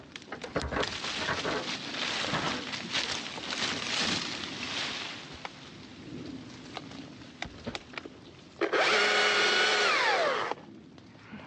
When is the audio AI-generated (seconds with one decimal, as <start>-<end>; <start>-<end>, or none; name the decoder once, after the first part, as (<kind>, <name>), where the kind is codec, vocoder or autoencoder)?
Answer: none